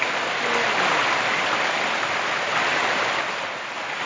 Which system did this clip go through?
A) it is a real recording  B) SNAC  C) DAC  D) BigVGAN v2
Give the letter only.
A